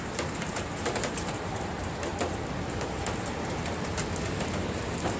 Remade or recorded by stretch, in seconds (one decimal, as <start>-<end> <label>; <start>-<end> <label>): 0.0-2.1 remade; 2.1-4.3 recorded; 4.3-5.2 remade